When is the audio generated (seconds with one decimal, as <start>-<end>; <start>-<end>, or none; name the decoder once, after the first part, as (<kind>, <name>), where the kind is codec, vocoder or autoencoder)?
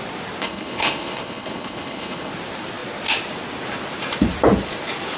0.4-2.3 (codec, HILCodec)